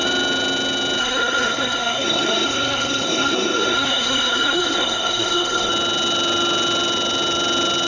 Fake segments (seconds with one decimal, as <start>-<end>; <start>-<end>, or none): 1.0-5.7